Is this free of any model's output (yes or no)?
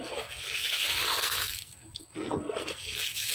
no